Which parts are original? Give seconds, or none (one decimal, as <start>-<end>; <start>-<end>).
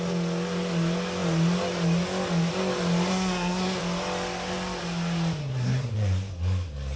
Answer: 0.0-3.1; 3.8-5.4; 5.9-7.0